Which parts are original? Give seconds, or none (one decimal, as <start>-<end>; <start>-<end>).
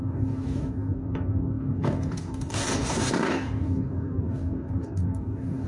none